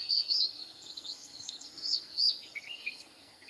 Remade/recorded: remade